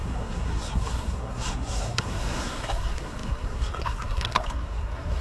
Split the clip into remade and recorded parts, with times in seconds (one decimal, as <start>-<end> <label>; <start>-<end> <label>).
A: 0.0-5.2 remade